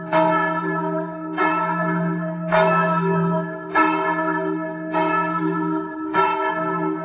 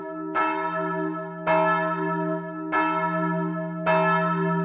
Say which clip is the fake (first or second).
first